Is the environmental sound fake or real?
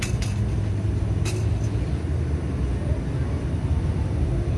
real